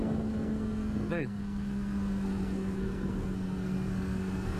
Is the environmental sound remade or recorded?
remade